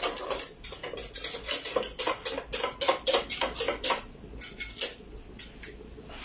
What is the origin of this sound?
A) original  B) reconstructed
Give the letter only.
A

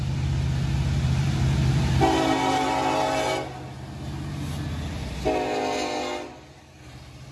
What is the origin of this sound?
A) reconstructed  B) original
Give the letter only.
B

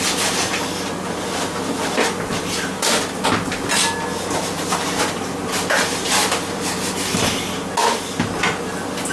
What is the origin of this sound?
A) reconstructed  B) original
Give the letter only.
B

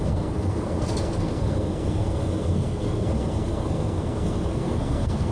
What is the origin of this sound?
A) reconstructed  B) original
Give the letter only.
A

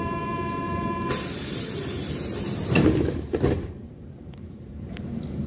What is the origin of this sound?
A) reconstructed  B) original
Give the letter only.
A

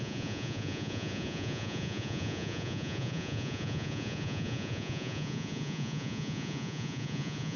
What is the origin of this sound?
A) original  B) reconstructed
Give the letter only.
B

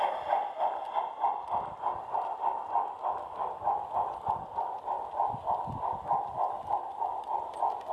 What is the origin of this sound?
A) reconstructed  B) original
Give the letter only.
B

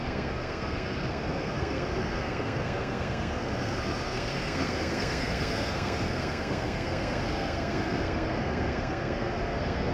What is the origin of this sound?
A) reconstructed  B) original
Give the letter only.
A